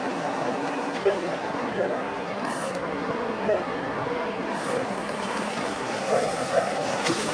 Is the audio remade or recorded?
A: remade